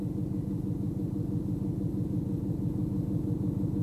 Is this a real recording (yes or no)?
yes